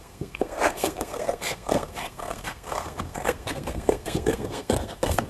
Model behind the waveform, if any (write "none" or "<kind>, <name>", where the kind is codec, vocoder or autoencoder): codec, SNAC